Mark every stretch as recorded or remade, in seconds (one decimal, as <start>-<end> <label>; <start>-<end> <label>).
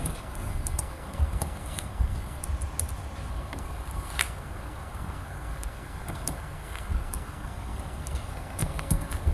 0.0-2.4 remade; 2.4-3.3 recorded; 3.3-9.3 remade